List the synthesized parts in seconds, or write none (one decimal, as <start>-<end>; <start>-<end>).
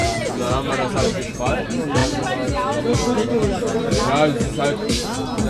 0.0-0.7